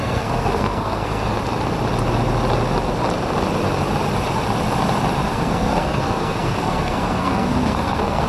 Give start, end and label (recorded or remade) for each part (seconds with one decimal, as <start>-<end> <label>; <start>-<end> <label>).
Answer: 0.0-1.3 remade; 1.3-5.3 recorded; 5.3-8.3 remade